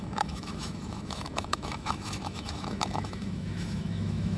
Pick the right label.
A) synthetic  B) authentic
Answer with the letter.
A